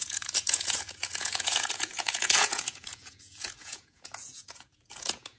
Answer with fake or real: fake